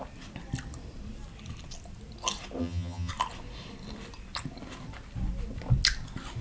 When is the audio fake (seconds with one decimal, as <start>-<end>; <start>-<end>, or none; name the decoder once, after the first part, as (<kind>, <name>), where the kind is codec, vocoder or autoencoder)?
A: 2.6-3.1 (vocoder, HiFi-GAN)